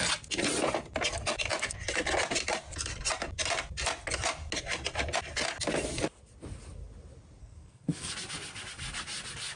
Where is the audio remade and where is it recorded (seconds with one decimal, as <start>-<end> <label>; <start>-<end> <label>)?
0.0-7.4 recorded; 7.4-8.1 remade; 8.1-9.6 recorded